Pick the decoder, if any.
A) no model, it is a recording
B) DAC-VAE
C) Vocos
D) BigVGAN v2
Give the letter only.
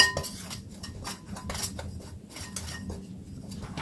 A